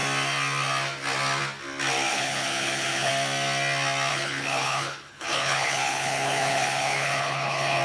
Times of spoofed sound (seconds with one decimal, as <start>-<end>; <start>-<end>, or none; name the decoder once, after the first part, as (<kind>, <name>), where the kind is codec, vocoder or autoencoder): 2.1-3.1 (codec, HILCodec); 4.1-7.8